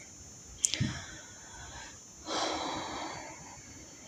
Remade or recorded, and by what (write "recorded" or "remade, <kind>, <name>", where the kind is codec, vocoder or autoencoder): recorded